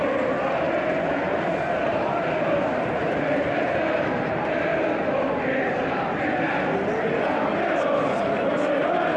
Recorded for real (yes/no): yes